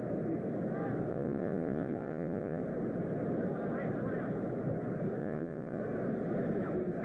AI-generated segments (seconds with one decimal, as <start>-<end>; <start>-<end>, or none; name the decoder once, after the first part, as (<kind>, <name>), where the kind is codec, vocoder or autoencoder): 1.1-2.6 (vocoder, Vocos); 5.2-5.8